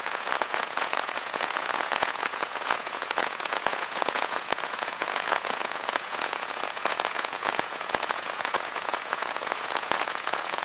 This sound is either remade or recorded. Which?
remade